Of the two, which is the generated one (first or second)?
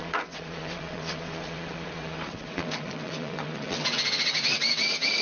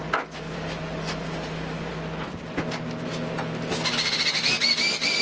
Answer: first